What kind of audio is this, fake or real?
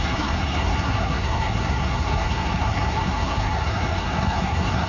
fake